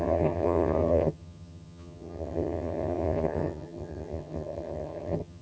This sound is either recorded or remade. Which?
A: remade